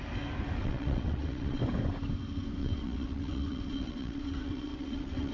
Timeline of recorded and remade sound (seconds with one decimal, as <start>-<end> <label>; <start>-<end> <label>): 0.0-0.6 recorded; 0.6-1.6 remade; 1.6-2.6 recorded; 2.6-5.3 remade